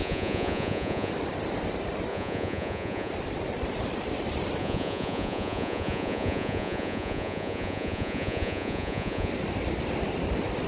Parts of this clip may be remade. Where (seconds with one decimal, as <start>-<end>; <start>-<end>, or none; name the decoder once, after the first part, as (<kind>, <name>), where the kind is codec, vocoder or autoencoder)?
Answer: 0.0-1.1 (vocoder, Vocos); 2.1-3.1; 4.6-9.3